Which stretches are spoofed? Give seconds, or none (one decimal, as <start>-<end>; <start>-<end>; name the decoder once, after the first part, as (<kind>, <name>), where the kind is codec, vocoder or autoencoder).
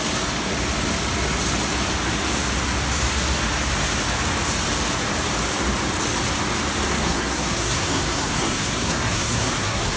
6.9-10.0 (codec, SNAC)